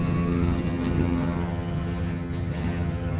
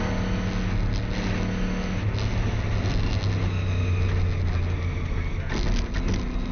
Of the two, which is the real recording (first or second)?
second